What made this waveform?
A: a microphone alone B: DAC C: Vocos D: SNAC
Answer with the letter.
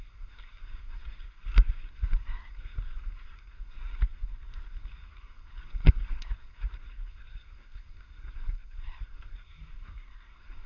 D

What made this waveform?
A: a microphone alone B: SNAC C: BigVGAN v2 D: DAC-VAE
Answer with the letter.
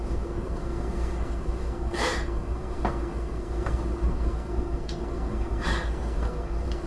B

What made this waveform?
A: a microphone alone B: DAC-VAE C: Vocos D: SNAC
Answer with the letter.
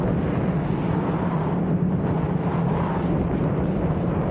A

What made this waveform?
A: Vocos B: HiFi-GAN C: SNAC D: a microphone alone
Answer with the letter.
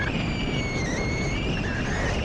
D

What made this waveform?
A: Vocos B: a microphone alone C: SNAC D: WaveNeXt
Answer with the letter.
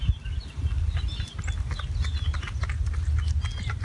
B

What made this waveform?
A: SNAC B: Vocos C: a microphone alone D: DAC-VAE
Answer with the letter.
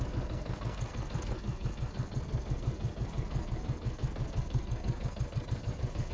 A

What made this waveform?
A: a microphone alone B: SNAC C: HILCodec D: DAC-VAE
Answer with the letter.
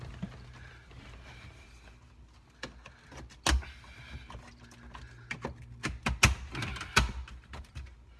A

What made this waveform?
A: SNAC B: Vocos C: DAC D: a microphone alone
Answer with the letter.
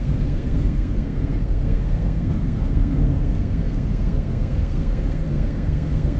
A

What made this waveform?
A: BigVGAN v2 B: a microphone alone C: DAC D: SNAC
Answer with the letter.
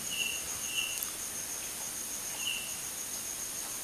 B